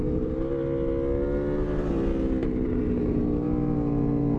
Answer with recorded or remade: recorded